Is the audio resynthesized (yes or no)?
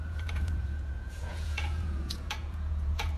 yes